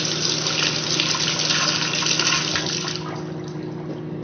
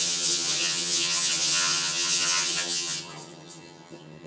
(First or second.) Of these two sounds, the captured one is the first